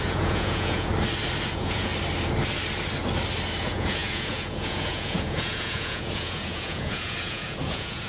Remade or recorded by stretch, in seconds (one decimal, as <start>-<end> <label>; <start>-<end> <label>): 0.0-0.9 remade; 0.9-1.5 recorded; 1.5-1.9 remade; 1.9-3.6 recorded; 3.6-8.1 remade